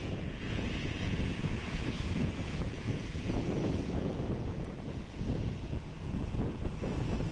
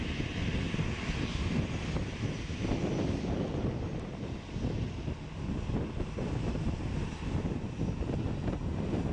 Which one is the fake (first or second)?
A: first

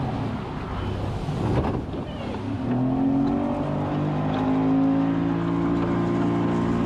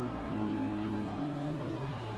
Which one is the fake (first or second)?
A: second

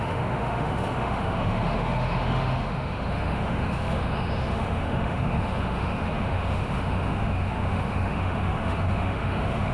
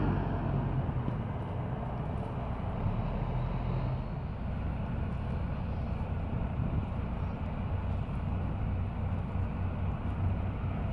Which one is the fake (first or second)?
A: first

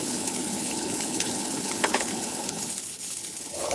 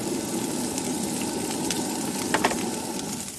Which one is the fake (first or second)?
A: first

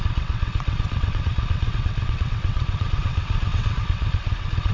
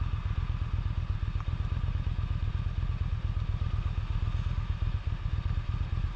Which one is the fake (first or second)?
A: first